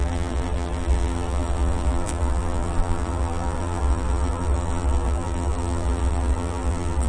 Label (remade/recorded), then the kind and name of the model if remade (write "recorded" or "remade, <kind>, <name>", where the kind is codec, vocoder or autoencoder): remade, vocoder, BigVGAN v2